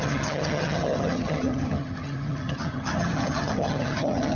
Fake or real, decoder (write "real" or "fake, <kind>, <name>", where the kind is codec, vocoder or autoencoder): fake, vocoder, HiFi-GAN